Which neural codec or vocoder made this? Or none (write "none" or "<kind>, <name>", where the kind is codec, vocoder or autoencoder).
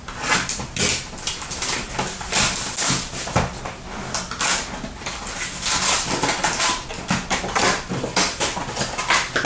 none